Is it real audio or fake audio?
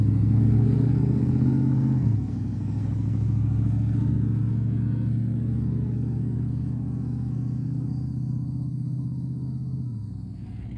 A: fake